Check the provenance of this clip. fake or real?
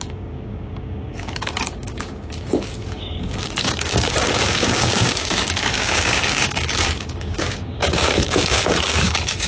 fake